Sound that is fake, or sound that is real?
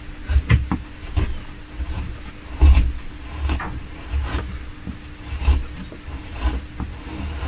real